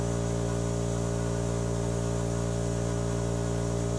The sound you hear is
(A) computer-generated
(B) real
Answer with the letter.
B